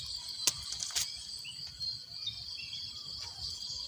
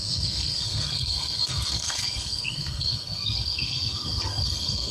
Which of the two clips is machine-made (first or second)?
second